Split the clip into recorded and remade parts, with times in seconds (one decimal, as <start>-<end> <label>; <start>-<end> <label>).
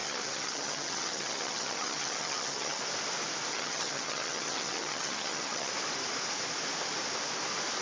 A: 0.0-2.8 remade; 2.8-3.5 recorded; 3.5-5.7 remade; 5.7-7.8 recorded